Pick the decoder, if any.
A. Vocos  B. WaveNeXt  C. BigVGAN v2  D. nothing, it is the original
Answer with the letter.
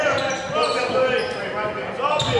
D